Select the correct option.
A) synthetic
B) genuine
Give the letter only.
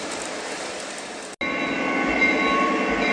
B